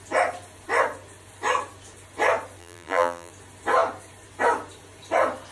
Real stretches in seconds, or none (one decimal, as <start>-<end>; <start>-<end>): 0.0-2.6; 3.3-5.5